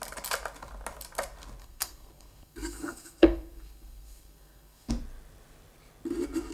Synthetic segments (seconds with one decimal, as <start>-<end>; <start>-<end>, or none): 1.6-4.9